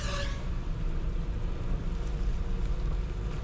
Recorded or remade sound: recorded